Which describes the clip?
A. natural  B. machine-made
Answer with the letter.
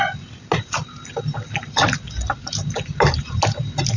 A